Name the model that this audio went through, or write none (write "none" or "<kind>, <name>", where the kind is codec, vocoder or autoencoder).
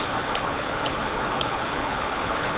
codec, HILCodec